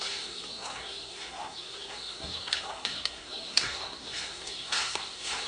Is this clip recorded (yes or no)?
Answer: no